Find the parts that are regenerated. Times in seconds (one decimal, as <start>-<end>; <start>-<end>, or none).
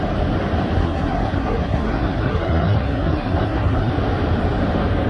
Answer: 0.8-3.9